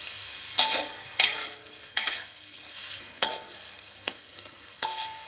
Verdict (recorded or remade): remade